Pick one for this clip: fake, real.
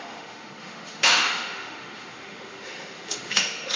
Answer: fake